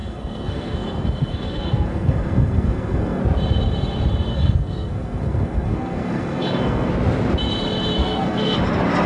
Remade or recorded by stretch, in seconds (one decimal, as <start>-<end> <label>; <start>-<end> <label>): 0.0-3.2 remade; 3.2-4.3 recorded; 4.3-6.9 remade; 6.9-8.0 recorded; 8.0-8.6 remade; 8.6-9.1 recorded